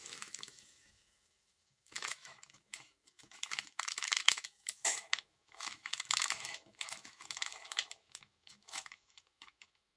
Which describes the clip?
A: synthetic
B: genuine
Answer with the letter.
A